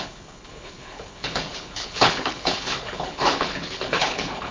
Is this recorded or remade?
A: remade